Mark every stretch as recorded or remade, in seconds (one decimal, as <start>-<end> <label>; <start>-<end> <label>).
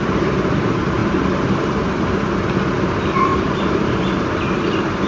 0.0-3.3 recorded; 3.3-4.0 remade; 4.0-5.1 recorded